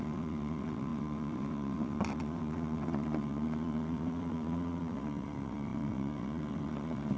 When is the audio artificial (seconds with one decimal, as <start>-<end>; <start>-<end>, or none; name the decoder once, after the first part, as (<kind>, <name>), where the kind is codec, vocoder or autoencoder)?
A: 0.0-7.2 (vocoder, WaveNeXt)

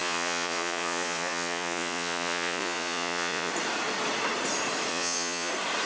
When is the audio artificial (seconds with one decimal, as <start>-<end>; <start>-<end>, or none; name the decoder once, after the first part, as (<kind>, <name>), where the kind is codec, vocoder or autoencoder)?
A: 0.0-3.5 (vocoder, Vocos); 4.9-5.5

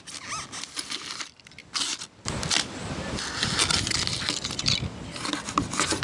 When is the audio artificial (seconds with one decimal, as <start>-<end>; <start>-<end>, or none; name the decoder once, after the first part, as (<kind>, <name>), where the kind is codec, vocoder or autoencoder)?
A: none